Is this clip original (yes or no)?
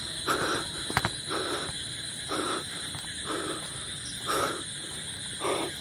yes